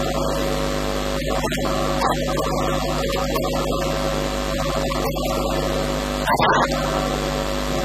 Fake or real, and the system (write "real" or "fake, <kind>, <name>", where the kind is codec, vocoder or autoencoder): real